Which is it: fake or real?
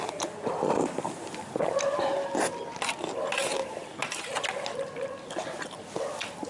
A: real